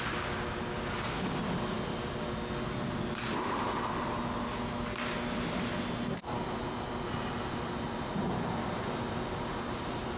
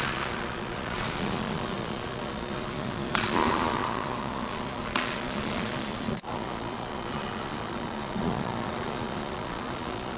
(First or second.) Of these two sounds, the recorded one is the first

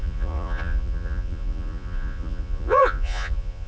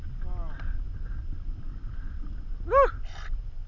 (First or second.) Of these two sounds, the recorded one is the second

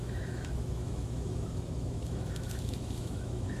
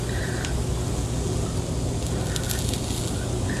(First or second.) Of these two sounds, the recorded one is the second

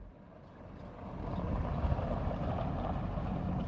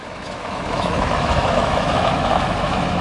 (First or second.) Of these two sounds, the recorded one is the first